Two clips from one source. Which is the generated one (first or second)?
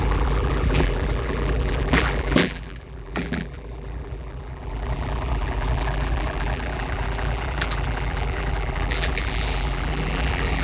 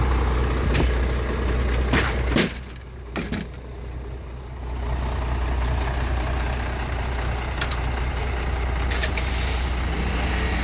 first